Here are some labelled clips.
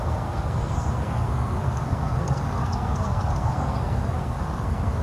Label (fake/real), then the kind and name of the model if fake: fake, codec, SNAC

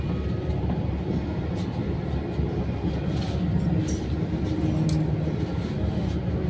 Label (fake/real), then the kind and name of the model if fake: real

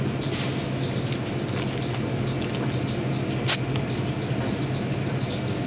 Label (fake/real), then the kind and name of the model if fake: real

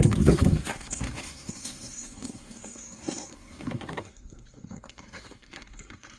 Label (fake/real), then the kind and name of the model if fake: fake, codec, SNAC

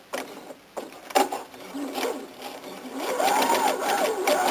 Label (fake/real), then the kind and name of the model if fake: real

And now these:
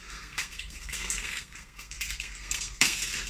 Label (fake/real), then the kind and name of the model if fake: fake, codec, SNAC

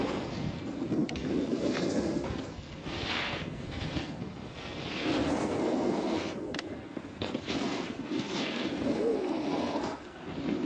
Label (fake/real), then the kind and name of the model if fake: fake, codec, SNAC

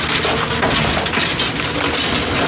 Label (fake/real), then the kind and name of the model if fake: real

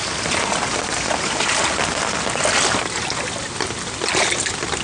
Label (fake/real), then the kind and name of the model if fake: real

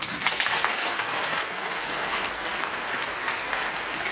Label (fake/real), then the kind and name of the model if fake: fake, codec, SNAC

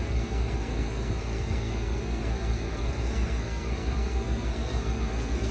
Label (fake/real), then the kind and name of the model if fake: fake, codec, SNAC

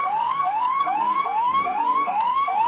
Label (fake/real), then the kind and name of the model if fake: fake, codec, SNAC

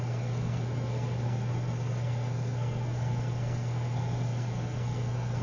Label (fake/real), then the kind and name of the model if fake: fake, codec, SNAC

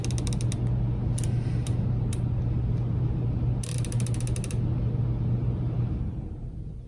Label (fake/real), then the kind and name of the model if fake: real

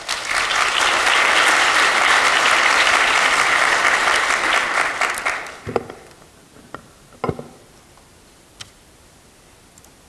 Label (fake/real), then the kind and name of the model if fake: real